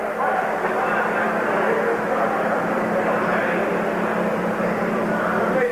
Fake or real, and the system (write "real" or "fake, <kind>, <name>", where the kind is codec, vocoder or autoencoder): real